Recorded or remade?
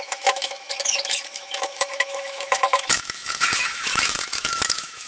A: remade